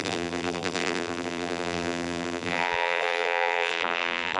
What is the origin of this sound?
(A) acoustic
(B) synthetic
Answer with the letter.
B